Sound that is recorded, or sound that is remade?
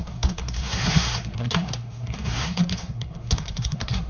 remade